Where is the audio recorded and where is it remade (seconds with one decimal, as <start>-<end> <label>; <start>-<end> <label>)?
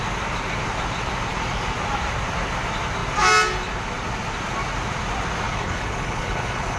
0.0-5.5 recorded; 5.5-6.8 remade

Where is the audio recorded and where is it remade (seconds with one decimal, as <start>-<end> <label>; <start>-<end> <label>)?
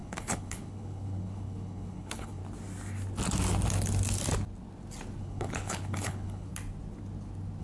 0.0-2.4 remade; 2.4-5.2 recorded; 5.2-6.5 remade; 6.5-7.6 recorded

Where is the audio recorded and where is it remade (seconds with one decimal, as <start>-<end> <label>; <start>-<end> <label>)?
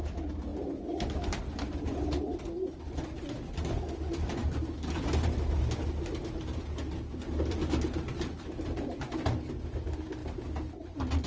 0.0-11.3 recorded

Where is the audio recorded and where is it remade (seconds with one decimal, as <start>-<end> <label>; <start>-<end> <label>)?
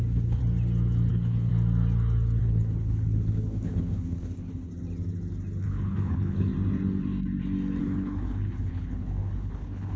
0.0-0.4 remade; 0.4-1.1 recorded; 1.1-1.5 remade; 1.5-2.4 recorded; 2.4-4.7 remade; 4.7-5.6 recorded; 5.6-6.5 remade; 6.5-7.8 recorded; 7.8-10.0 remade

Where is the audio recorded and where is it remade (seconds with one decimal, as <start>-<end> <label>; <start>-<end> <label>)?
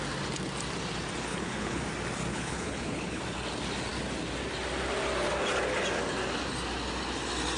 0.0-1.3 recorded; 1.3-1.8 remade; 1.8-2.3 recorded; 2.3-3.2 remade; 3.2-7.6 recorded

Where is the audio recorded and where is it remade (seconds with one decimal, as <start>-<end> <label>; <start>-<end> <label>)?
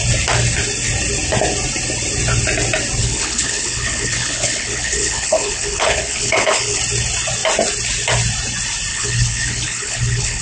0.0-3.0 recorded; 3.0-6.8 remade; 6.8-8.9 recorded; 8.9-10.4 remade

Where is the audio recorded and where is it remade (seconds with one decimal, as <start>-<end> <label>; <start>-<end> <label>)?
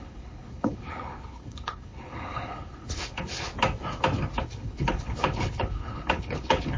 0.0-3.5 remade; 3.5-4.4 recorded; 4.4-6.8 remade